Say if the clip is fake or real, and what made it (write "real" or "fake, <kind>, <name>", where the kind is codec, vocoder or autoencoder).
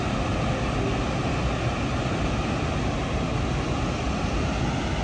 real